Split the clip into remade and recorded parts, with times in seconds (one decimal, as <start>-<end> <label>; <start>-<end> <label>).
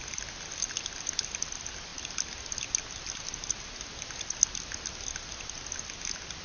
0.0-6.4 recorded